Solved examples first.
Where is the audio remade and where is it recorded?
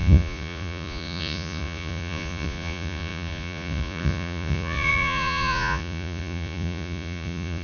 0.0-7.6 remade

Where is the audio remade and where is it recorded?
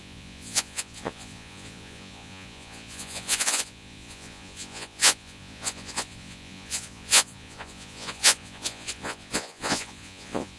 0.0-10.6 remade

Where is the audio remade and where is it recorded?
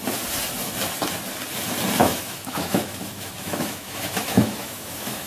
0.0-2.0 recorded; 2.0-5.3 remade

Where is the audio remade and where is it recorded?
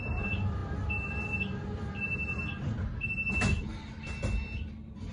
0.0-5.1 recorded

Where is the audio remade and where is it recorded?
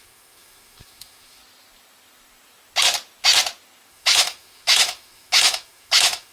0.0-1.4 remade; 1.4-3.9 recorded; 3.9-6.3 remade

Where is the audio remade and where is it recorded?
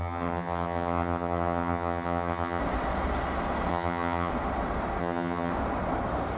0.0-2.6 remade; 2.6-3.7 recorded; 3.7-4.3 remade; 4.3-5.0 recorded; 5.0-5.5 remade; 5.5-6.4 recorded